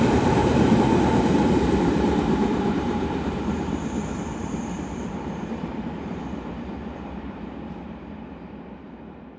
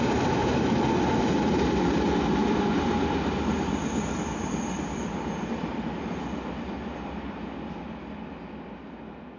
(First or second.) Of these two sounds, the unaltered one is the second